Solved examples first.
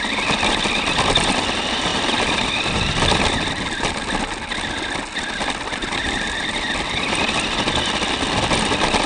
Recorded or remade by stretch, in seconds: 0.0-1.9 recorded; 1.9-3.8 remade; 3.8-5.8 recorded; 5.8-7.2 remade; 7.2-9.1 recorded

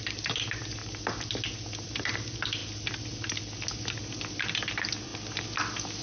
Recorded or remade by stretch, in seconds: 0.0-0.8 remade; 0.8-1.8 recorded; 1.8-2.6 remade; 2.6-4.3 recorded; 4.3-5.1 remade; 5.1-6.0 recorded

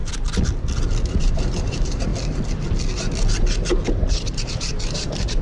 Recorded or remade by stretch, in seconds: 0.0-1.2 recorded; 1.2-2.1 remade; 2.1-3.8 recorded; 3.8-5.4 remade